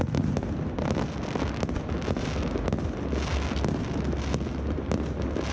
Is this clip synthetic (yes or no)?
no